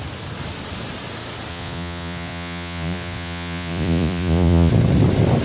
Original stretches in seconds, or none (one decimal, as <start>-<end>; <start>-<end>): 0.0-1.5; 4.7-5.4